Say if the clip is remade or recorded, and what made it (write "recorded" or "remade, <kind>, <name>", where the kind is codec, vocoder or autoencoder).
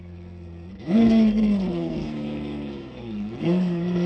remade, codec, SNAC